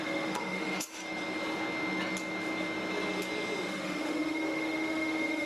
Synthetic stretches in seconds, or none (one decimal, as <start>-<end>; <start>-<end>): 0.0-1.0; 3.7-5.5